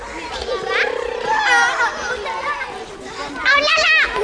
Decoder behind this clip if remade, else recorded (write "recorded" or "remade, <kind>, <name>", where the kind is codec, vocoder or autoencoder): recorded